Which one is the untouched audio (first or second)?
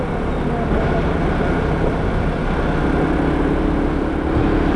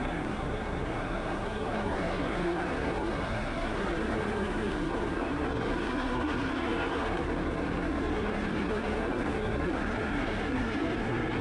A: first